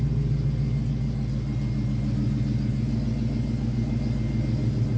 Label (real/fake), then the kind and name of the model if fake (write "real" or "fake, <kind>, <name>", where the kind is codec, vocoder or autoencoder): real